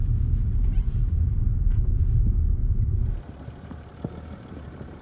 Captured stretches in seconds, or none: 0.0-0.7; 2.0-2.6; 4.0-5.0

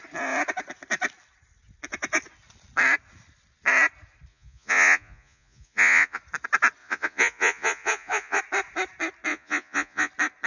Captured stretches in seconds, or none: 0.0-4.3; 6.2-6.8; 8.4-9.3; 10.1-10.5

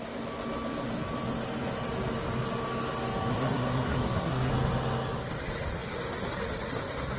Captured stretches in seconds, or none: 0.0-3.3; 4.5-7.2

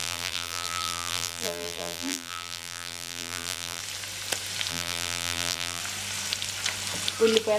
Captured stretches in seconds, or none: 3.8-4.7; 5.8-7.6

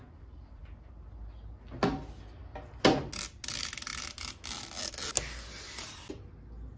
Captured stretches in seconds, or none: 0.0-6.8